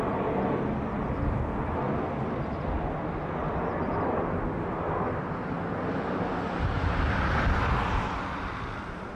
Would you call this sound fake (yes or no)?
no